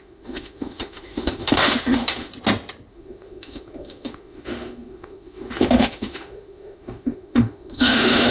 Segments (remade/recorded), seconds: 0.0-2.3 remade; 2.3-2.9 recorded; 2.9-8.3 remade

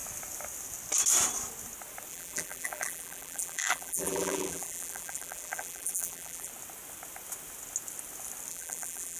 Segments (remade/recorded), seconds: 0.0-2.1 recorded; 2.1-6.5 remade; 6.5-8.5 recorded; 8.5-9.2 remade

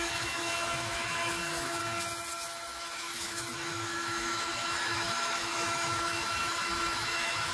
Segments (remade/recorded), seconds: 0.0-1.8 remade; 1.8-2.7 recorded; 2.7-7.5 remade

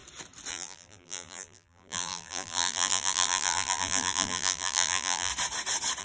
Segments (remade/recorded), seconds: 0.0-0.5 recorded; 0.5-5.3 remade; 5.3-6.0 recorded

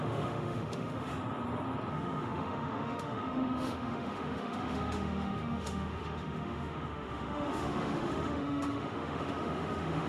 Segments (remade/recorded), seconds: 0.0-1.1 remade; 1.1-1.9 recorded; 1.9-10.1 remade

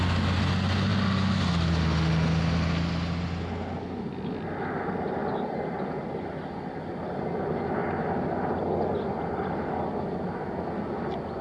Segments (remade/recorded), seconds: 0.0-11.4 recorded

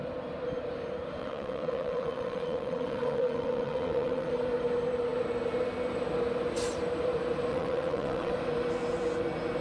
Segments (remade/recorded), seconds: 0.0-1.2 recorded; 1.2-4.3 remade; 4.3-7.5 recorded; 7.5-8.3 remade; 8.3-9.6 recorded

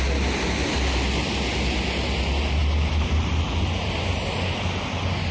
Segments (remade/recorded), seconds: 0.0-2.6 recorded; 2.6-4.3 remade; 4.3-5.3 recorded